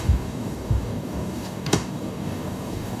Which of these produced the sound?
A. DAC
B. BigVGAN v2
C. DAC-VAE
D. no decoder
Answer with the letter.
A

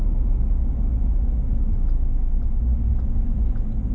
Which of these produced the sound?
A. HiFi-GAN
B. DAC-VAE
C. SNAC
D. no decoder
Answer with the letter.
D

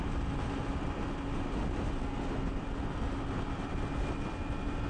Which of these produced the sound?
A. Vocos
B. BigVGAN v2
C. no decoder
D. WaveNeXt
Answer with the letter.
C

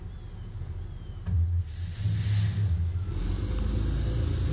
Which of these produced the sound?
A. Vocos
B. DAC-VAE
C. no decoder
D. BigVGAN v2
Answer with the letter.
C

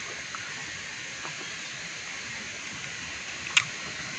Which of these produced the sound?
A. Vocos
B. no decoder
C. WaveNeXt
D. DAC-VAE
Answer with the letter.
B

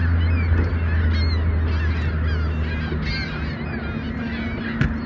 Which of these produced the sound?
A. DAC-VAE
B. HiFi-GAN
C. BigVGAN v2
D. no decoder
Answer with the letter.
D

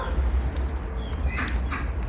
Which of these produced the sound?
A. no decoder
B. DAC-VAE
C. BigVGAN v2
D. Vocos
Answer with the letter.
A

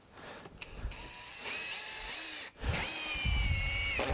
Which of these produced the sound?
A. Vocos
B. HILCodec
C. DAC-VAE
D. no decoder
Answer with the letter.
D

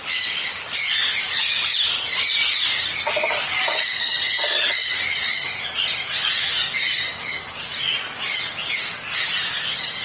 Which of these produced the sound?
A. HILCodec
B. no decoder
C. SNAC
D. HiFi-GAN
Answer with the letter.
B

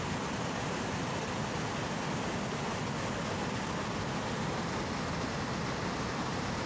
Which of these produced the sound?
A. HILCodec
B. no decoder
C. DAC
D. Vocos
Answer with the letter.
B